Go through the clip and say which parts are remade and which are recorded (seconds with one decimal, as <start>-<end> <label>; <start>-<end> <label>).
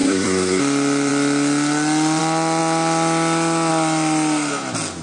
0.0-0.6 remade; 0.6-5.0 recorded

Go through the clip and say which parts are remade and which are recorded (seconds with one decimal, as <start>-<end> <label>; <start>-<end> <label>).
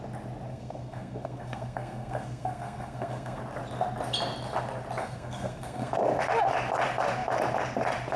0.0-0.5 recorded; 0.5-3.4 remade; 3.4-5.0 recorded; 5.0-5.9 remade; 5.9-8.2 recorded